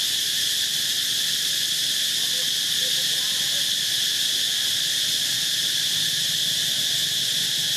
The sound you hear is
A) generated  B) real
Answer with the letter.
B